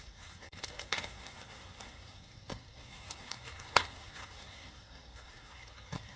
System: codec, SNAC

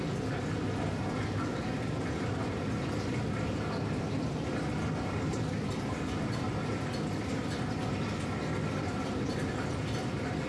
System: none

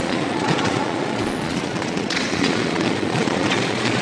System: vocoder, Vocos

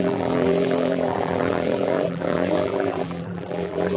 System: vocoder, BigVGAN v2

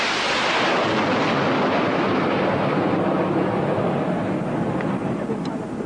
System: none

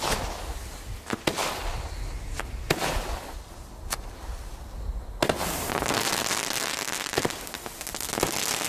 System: none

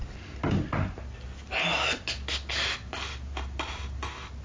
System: none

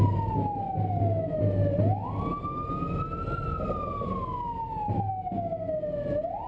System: none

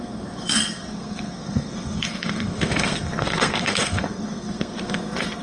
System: codec, SNAC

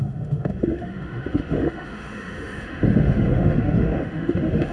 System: autoencoder, DAC-VAE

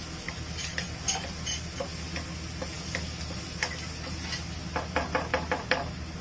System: none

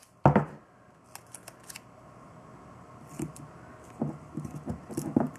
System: none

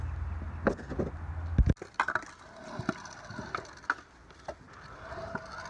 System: none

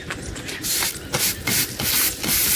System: none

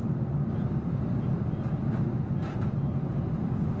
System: none